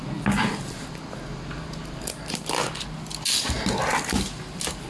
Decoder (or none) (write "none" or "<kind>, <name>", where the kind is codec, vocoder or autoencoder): none